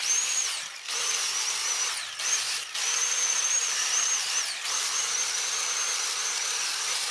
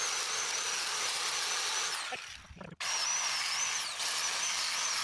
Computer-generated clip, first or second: first